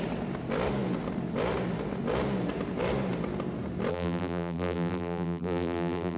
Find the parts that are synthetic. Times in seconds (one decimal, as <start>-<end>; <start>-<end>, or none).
3.9-6.2